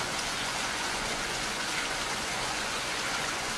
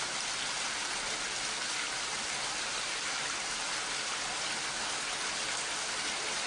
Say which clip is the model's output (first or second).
first